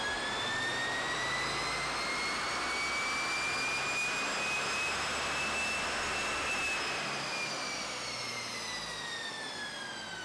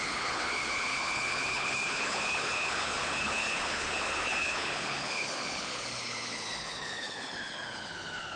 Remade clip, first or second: second